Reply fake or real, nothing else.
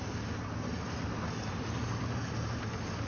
real